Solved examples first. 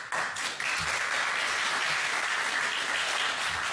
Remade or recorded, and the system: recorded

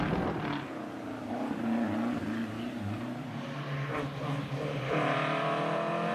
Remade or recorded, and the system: recorded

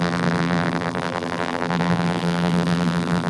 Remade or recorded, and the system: remade, vocoder, BigVGAN v2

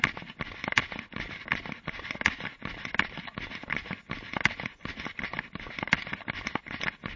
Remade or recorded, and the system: recorded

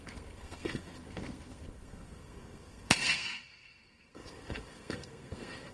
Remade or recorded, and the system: remade, codec, SNAC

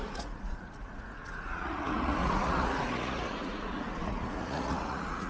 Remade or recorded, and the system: remade, vocoder, Vocos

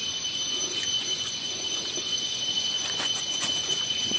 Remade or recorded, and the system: remade, vocoder, Vocos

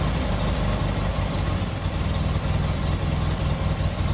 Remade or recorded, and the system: recorded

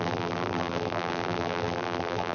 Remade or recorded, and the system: remade, vocoder, BigVGAN v2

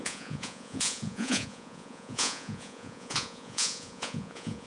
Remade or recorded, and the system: remade, vocoder, Vocos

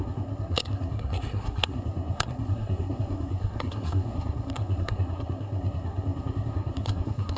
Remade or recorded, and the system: remade, codec, SNAC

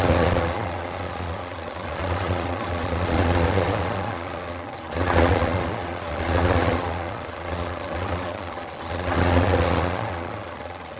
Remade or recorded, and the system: remade, vocoder, Vocos